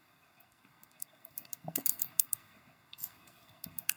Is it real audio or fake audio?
fake